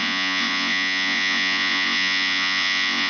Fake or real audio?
fake